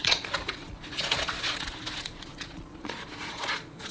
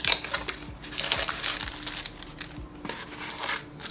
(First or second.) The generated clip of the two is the first